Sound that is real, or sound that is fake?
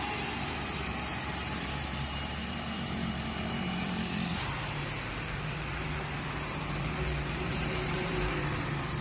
fake